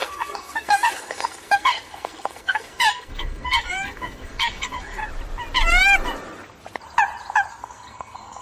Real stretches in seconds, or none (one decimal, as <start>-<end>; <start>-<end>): 5.0-7.5